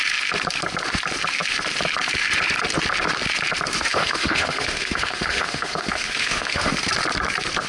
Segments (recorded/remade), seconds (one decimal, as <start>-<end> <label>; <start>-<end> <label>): 0.0-3.9 recorded; 3.9-6.7 remade; 6.7-7.7 recorded